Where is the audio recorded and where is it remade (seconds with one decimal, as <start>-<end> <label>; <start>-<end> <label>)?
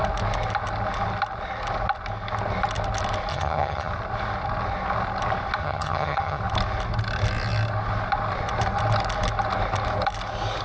0.0-3.3 recorded; 3.3-3.9 remade; 3.9-5.6 recorded; 5.6-6.4 remade; 6.4-10.6 recorded